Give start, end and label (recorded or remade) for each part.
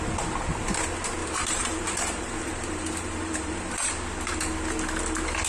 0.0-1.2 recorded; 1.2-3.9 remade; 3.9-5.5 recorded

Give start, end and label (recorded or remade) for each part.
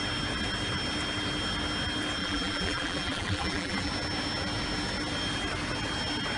0.0-2.2 recorded; 2.2-3.9 remade; 3.9-6.4 recorded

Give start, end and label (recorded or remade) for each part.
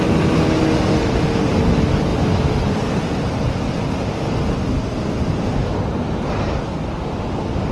0.0-7.7 recorded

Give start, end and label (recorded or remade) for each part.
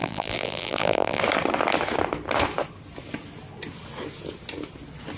0.0-1.2 remade; 1.2-5.2 recorded